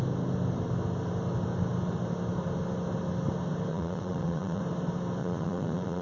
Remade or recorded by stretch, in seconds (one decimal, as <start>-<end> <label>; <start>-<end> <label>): 0.0-3.7 recorded; 3.7-4.6 remade; 4.6-5.2 recorded; 5.2-6.0 remade